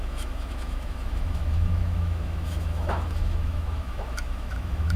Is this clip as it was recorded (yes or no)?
no